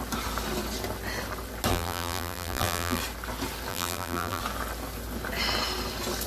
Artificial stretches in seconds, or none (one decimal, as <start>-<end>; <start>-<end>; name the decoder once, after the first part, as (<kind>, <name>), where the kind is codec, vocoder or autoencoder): 1.7-3.0 (vocoder, BigVGAN v2); 3.7-4.4